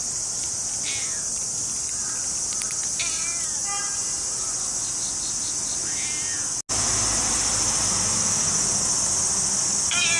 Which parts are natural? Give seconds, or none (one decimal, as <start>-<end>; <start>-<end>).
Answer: 0.0-10.2

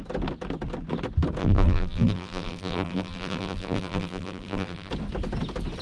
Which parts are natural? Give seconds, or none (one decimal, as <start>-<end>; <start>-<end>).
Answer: 0.0-1.4; 4.9-5.8

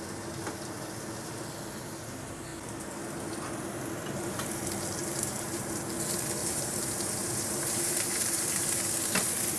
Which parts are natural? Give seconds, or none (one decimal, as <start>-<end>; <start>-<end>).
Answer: 0.0-5.0; 5.8-6.4; 8.8-9.6

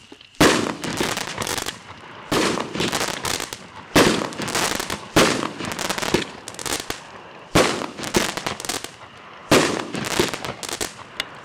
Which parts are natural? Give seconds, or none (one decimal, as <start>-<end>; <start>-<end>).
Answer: 0.0-0.9; 2.9-11.4

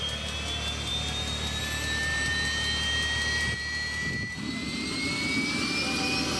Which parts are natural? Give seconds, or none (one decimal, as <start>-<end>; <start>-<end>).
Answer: 0.0-6.4

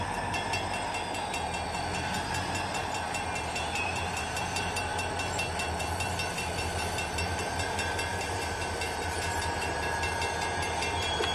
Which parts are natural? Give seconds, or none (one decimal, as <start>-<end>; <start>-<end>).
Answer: 0.0-8.1; 10.1-11.3

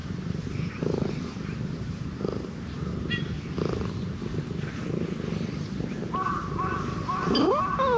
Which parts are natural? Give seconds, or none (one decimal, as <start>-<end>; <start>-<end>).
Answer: 0.0-1.1; 2.9-8.0

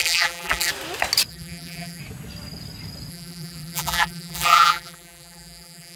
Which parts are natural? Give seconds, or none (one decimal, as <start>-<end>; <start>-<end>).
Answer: 0.7-1.3; 2.0-3.1